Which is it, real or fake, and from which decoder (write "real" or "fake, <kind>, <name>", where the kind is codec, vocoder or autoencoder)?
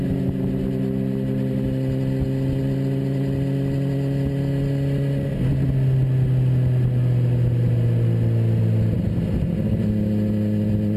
real